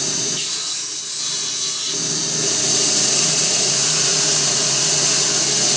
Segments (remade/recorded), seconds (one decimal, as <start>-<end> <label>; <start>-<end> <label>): 0.0-0.9 remade; 0.9-2.7 recorded; 2.7-5.8 remade